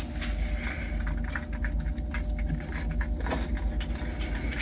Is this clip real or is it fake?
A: real